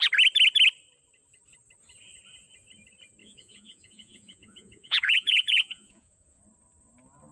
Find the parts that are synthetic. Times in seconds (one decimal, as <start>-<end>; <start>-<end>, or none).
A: 3.2-6.4